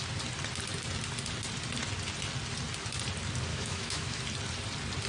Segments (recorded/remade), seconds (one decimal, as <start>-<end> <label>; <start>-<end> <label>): 0.0-3.5 recorded; 3.5-4.2 remade; 4.2-5.1 recorded